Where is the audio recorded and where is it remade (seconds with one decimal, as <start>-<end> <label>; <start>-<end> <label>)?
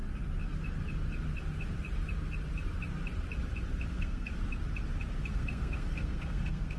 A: 0.0-3.9 recorded; 3.9-4.3 remade; 4.3-5.3 recorded; 5.3-6.8 remade